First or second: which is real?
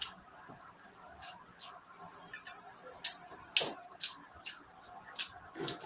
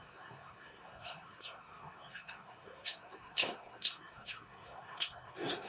first